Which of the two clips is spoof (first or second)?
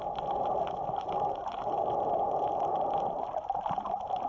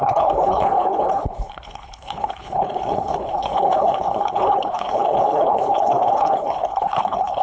second